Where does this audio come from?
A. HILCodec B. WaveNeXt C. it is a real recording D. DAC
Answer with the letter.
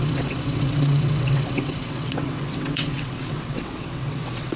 B